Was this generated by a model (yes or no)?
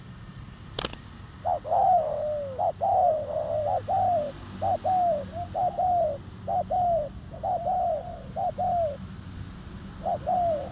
no